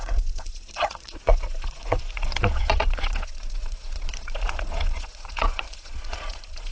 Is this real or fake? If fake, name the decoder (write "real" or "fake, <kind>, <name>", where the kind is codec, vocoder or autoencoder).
fake, vocoder, Vocos